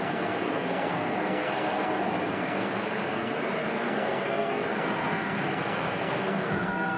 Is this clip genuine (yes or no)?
no